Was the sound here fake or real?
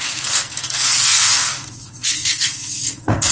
fake